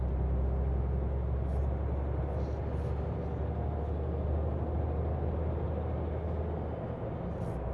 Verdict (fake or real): real